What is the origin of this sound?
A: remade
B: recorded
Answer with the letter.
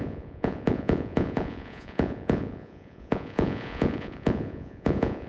A